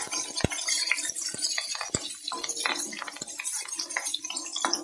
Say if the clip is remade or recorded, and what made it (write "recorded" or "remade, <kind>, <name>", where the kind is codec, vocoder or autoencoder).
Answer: recorded